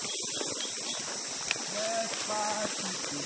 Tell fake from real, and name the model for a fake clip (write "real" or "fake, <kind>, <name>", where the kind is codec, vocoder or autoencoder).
real